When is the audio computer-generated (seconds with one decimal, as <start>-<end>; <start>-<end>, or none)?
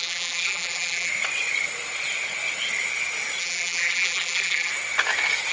0.0-1.1; 3.4-4.7